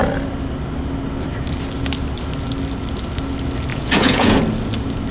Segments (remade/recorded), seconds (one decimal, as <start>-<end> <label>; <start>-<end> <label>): 0.0-3.7 recorded; 3.7-4.4 remade; 4.4-5.1 recorded